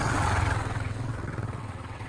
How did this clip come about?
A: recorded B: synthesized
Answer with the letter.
B